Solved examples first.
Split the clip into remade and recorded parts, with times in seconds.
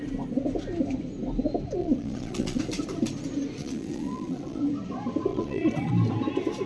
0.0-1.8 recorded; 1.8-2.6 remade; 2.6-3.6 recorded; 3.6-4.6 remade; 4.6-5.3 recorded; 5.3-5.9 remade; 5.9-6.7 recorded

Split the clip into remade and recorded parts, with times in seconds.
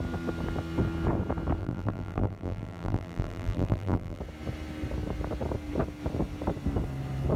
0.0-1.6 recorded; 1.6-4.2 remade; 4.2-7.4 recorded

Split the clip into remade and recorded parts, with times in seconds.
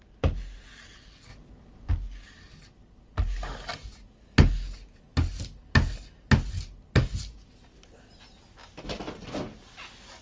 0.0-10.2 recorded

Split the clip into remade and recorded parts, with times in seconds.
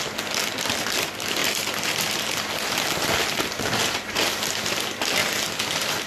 0.0-6.1 recorded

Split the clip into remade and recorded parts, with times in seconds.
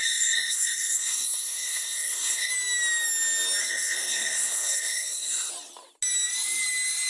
0.0-2.5 remade; 2.5-3.6 recorded; 3.6-5.5 remade; 5.5-7.1 recorded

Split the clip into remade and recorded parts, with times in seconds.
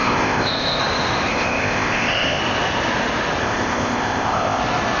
0.0-0.8 remade; 0.8-1.3 recorded; 1.3-2.4 remade; 2.4-3.4 recorded; 3.4-4.6 remade; 4.6-5.0 recorded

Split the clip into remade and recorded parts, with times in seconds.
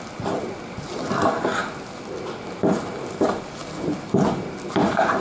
0.0-5.2 recorded